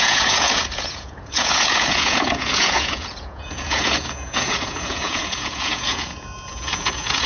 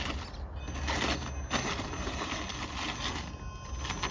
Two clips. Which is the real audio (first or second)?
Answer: second